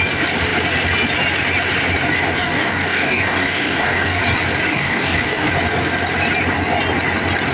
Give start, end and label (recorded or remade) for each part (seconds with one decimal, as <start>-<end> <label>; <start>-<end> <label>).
0.0-2.4 recorded; 2.4-4.2 remade; 4.2-4.7 recorded; 4.7-5.5 remade; 5.5-7.5 recorded